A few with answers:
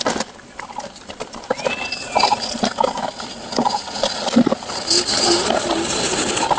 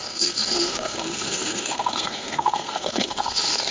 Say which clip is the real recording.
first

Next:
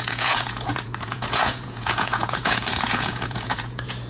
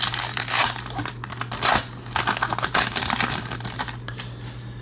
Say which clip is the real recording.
second